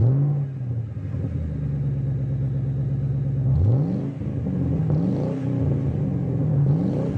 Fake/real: real